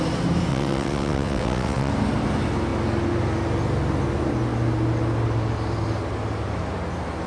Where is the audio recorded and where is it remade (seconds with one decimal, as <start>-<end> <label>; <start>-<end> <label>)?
0.0-0.5 recorded; 0.5-1.9 remade; 1.9-7.3 recorded